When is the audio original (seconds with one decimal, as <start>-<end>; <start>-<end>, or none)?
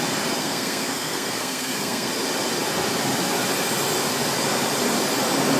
0.0-0.4; 2.1-5.6